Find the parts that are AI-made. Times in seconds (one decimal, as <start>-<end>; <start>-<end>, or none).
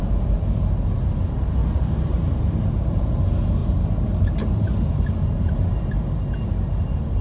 1.6-3.2; 3.6-4.7